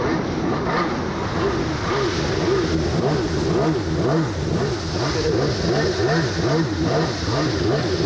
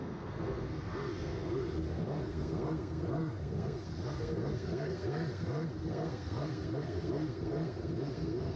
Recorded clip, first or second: first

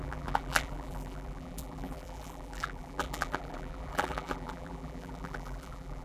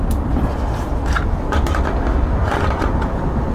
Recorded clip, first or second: second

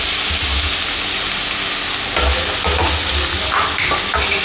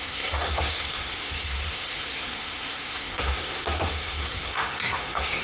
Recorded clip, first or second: first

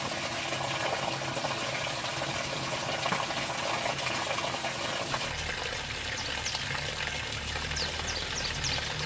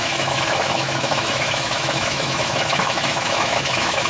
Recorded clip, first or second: first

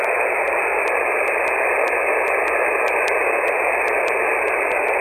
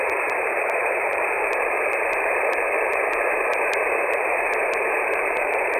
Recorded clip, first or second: first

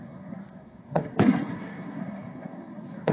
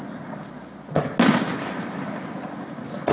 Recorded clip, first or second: second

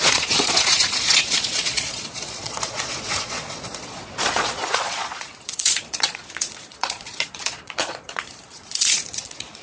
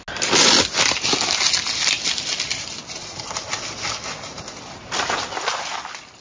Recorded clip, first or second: second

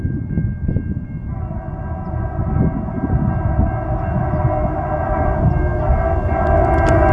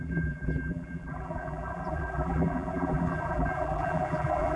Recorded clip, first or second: first